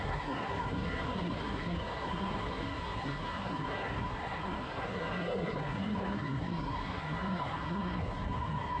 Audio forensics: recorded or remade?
remade